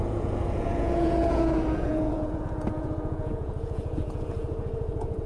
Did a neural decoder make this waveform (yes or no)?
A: yes